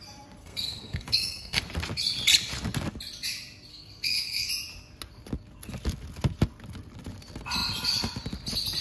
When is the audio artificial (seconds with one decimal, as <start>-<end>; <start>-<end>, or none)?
0.4-1.6; 3.7-4.5